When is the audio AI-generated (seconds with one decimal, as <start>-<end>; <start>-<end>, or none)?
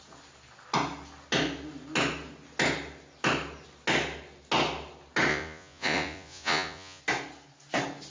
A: 5.3-7.0